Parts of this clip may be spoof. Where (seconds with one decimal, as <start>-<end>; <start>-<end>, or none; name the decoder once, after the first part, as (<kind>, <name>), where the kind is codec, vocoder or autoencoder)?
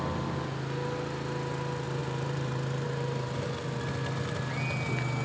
2.0-3.9 (vocoder, BigVGAN v2)